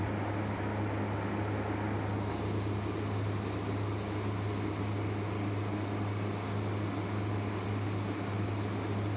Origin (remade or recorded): recorded